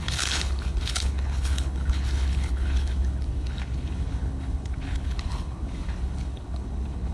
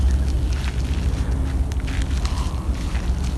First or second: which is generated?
first